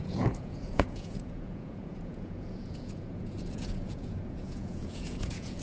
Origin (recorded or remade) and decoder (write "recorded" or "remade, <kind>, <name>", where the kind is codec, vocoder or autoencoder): remade, vocoder, Vocos